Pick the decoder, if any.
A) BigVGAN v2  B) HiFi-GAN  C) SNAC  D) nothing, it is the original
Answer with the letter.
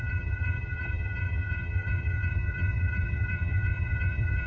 B